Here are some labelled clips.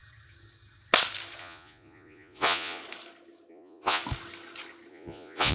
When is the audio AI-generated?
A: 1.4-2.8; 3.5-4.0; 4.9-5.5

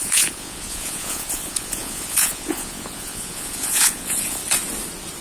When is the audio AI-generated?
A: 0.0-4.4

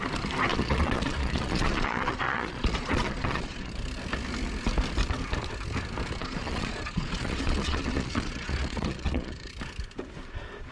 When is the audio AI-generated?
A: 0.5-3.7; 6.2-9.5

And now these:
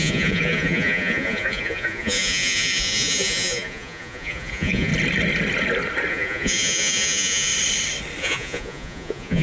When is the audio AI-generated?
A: 0.0-4.9; 6.1-7.5; 8.2-9.4

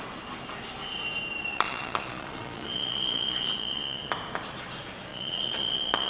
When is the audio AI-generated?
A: 1.5-4.1; 5.1-6.1

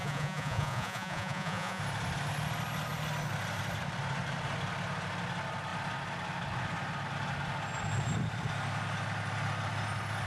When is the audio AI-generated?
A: 0.0-1.8